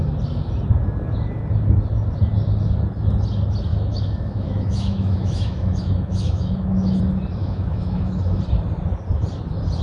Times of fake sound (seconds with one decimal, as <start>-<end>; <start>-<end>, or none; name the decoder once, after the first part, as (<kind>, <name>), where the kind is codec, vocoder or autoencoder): 3.7-7.0 (autoencoder, DAC-VAE); 7.4-8.4